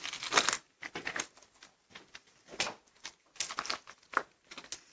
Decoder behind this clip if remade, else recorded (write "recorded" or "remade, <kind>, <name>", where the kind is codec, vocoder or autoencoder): recorded